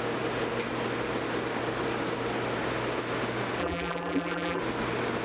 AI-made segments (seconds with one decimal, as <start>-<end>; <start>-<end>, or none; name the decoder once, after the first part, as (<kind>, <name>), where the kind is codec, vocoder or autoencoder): 3.6-4.6 (vocoder, BigVGAN v2)